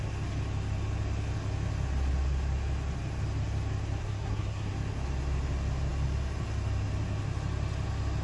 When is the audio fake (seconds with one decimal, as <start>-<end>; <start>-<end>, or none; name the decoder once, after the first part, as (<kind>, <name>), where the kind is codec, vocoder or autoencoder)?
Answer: 4.0-4.7 (codec, SNAC)